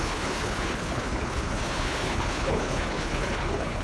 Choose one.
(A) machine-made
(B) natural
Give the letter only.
A